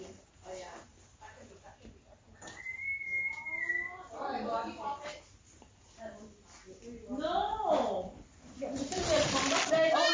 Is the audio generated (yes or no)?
no